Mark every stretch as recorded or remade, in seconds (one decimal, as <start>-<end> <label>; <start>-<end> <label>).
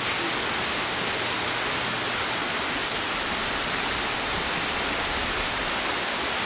0.0-6.5 recorded